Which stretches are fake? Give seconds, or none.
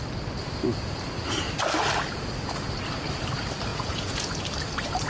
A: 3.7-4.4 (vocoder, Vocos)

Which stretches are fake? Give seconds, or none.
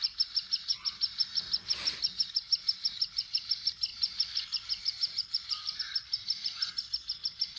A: 3.9-5.8 (vocoder, BigVGAN v2)